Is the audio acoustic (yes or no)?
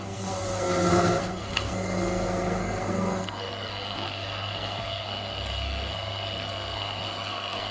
no